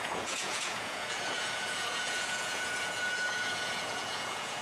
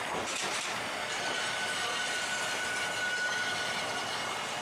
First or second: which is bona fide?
second